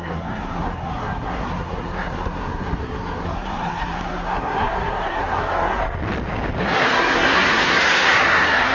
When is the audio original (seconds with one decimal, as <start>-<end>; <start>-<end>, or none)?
5.8-6.6